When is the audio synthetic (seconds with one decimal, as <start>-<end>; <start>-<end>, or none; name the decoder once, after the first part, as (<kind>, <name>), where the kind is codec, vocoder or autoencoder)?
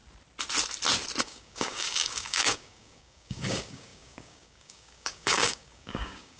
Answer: 1.2-6.4 (codec, DAC)